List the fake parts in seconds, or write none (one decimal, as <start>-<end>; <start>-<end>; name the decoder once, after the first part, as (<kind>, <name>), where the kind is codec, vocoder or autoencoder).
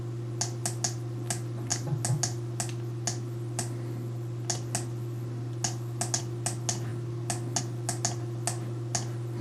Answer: none